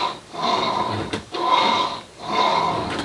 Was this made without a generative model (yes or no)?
no